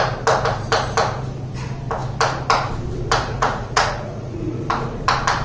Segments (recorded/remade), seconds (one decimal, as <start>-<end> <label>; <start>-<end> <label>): 0.0-3.3 recorded; 3.3-4.6 remade; 4.6-5.4 recorded